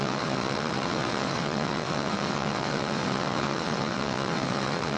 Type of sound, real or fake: fake